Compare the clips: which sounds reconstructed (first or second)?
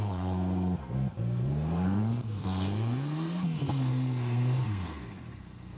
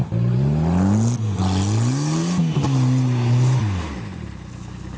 first